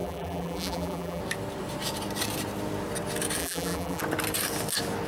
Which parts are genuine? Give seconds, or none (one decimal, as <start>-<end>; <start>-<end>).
1.2-3.4; 4.0-5.1